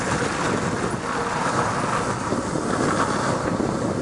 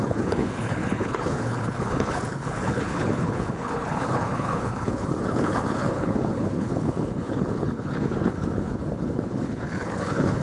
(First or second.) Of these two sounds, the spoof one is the second